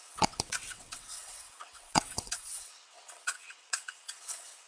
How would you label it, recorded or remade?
remade